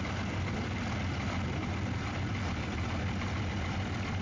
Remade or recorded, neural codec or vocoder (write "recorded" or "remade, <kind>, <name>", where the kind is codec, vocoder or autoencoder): recorded